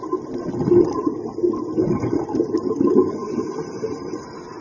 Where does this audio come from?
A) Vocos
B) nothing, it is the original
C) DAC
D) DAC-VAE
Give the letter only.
B